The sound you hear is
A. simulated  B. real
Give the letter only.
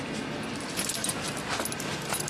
B